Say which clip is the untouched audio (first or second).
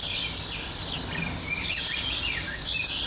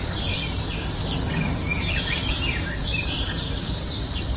first